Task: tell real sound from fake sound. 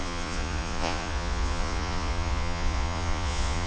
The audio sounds fake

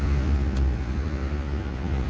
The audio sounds fake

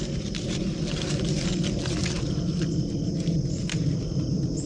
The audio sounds real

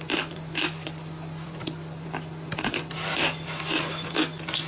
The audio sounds real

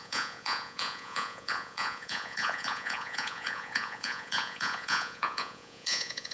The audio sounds fake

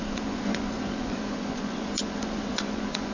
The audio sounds fake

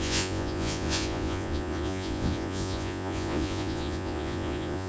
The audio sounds fake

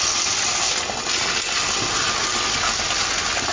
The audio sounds real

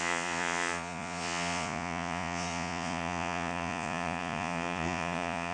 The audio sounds fake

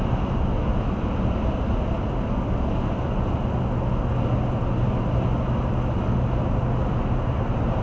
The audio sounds real